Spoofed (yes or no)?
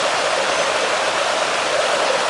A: no